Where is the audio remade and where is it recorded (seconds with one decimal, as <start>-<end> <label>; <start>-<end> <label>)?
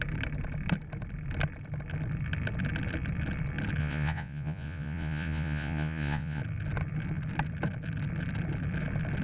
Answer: 0.0-3.8 recorded; 3.8-6.4 remade; 6.4-9.2 recorded